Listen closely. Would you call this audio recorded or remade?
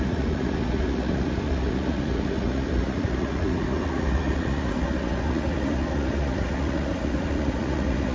remade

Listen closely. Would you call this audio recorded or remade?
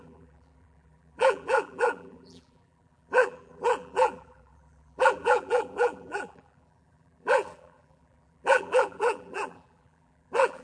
remade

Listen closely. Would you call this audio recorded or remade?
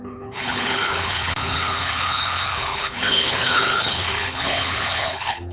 remade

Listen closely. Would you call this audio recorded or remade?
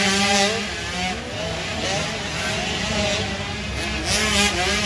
recorded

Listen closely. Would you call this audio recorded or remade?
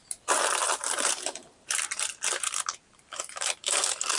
remade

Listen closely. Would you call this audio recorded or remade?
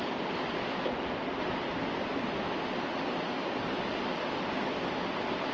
recorded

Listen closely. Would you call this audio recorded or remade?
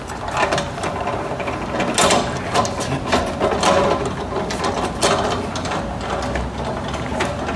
recorded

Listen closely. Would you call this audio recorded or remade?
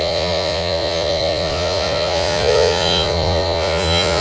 remade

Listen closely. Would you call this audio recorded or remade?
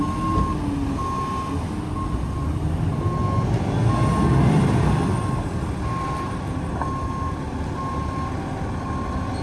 recorded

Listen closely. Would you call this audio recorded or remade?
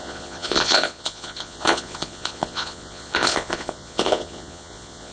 remade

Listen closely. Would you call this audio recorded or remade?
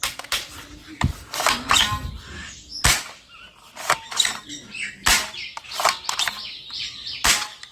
recorded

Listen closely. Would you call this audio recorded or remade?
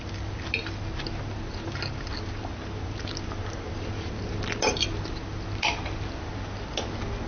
recorded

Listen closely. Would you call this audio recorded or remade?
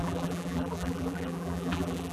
remade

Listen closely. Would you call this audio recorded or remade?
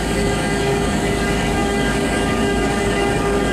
remade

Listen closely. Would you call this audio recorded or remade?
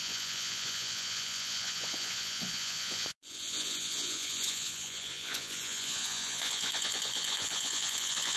remade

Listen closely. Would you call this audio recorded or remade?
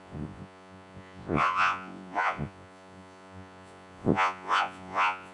remade